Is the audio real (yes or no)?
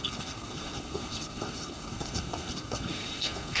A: no